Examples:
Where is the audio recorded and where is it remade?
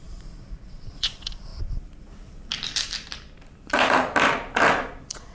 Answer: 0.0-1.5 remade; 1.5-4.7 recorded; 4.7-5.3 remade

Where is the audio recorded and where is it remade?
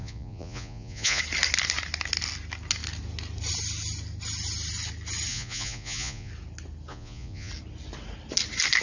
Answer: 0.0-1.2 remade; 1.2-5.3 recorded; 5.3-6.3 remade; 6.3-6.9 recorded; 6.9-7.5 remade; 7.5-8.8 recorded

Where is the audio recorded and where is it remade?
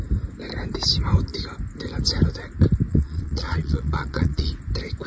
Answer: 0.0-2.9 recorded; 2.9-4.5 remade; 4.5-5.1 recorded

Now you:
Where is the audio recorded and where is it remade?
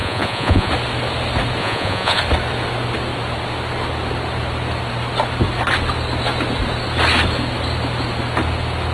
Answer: 0.0-0.7 remade; 0.7-1.6 recorded; 1.6-2.2 remade; 2.2-8.9 recorded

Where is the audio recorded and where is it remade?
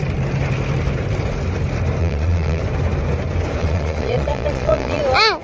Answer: 0.0-2.0 recorded; 2.0-2.6 remade; 2.6-3.6 recorded; 3.6-5.0 remade; 5.0-5.4 recorded